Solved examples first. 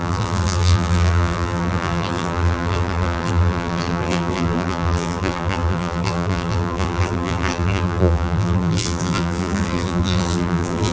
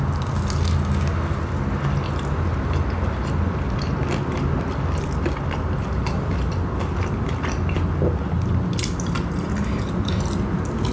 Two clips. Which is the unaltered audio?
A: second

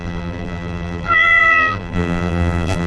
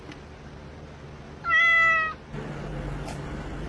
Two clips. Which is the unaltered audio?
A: second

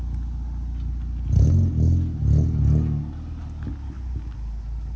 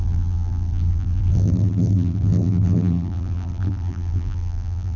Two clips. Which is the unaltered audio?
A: first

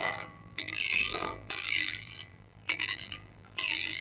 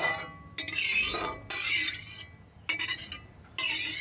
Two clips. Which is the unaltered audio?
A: second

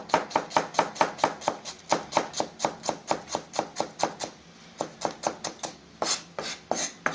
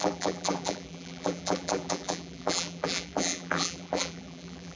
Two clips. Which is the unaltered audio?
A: first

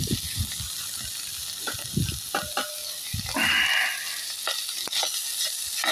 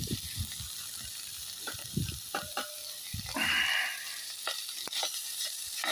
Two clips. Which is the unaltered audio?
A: first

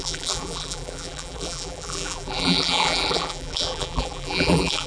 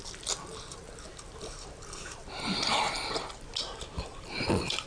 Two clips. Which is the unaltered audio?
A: second